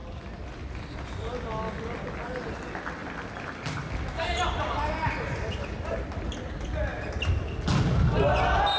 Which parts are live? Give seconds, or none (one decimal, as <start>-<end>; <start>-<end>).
0.0-8.8